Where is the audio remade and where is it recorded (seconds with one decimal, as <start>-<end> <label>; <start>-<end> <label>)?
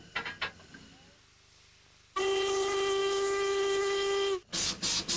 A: 0.0-3.0 recorded; 3.0-4.4 remade; 4.4-5.2 recorded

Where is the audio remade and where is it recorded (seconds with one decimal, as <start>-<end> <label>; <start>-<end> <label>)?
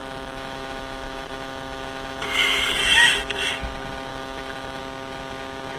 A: 0.0-3.5 remade; 3.5-4.1 recorded; 4.1-4.8 remade; 4.8-5.8 recorded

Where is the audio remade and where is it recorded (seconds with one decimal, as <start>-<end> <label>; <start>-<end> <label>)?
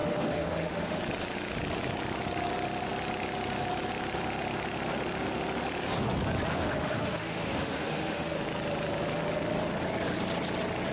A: 0.0-1.0 remade; 1.0-6.5 recorded; 6.5-8.4 remade; 8.4-10.9 recorded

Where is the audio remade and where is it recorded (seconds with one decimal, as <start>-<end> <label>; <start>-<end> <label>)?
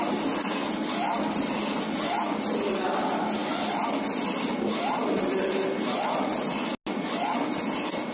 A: 0.0-8.1 recorded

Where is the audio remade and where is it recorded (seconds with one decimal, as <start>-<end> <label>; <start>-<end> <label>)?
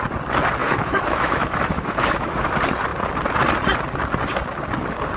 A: 0.0-0.6 recorded; 0.6-2.5 remade; 2.5-5.2 recorded